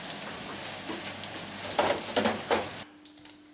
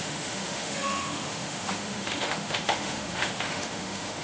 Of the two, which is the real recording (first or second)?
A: first